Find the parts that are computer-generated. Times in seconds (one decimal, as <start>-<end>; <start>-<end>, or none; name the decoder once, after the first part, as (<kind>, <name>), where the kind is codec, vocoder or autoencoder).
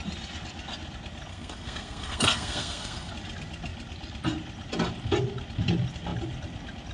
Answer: 1.3-3.1 (codec, SNAC)